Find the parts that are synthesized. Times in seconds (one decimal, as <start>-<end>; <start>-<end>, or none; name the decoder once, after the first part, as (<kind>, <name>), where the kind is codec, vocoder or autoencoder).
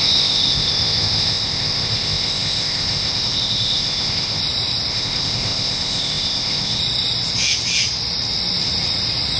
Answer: 0.0-4.4 (codec, ZipCodec); 4.9-6.8